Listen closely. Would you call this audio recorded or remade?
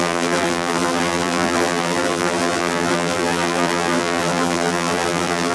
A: remade